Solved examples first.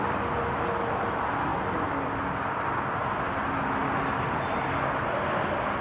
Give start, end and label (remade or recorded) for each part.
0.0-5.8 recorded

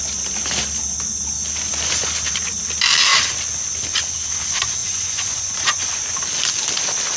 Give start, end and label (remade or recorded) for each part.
0.0-4.8 recorded; 4.8-6.0 remade; 6.0-7.2 recorded

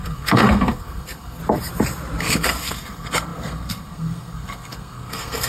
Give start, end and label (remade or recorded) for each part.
0.0-1.4 remade; 1.4-2.2 recorded; 2.2-5.5 remade

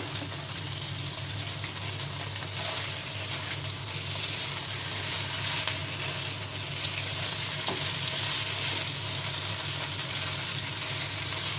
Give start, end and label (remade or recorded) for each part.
0.0-11.6 recorded